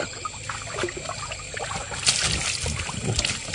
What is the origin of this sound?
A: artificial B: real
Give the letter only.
B